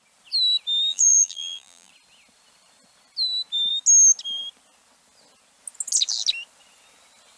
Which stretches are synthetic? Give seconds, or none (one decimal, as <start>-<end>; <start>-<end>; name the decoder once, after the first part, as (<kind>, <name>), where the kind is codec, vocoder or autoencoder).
0.9-1.9 (vocoder, BigVGAN v2)